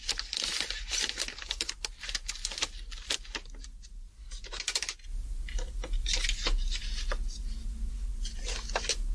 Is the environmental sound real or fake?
real